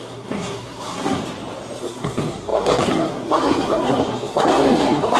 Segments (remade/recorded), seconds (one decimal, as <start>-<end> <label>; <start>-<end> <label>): 0.0-1.2 remade; 1.2-1.8 recorded; 1.8-5.2 remade